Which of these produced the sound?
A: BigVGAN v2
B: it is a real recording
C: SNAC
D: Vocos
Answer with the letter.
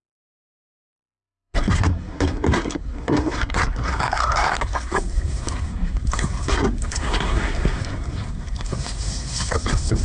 C